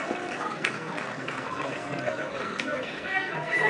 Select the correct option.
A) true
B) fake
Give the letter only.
B